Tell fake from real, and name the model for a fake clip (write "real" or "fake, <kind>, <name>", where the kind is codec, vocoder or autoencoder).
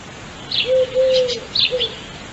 real